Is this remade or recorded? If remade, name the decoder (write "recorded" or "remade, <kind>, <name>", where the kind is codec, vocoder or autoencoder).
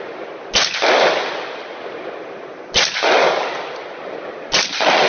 recorded